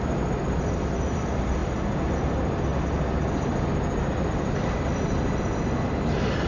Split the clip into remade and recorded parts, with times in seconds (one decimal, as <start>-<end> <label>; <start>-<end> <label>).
0.0-6.5 recorded